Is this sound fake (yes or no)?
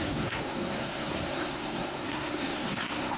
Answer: yes